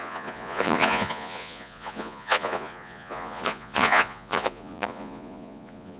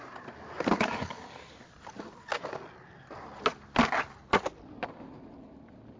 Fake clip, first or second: first